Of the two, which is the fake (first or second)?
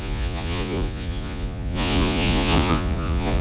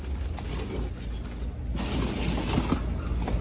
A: first